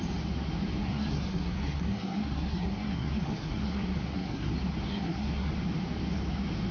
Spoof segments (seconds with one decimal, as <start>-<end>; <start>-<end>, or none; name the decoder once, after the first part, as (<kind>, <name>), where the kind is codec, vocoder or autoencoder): 0.8-4.5 (codec, SNAC); 4.9-5.5